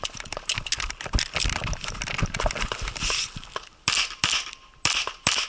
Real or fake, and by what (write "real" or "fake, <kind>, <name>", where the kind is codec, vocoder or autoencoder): real